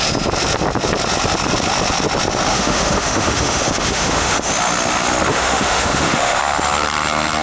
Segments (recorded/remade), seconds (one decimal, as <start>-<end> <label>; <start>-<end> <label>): 0.0-2.5 recorded; 2.5-4.5 remade; 4.5-5.3 recorded; 5.3-6.4 remade; 6.4-7.4 recorded

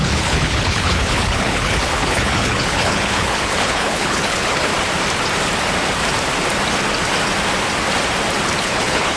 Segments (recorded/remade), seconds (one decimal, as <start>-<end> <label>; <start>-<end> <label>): 0.0-4.7 remade; 4.7-8.6 recorded; 8.6-9.2 remade

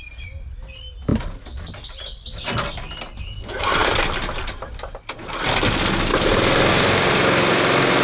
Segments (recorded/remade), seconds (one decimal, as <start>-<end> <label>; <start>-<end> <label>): 0.0-8.0 recorded